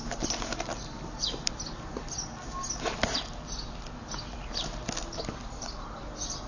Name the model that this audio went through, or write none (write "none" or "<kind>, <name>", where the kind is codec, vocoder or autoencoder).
none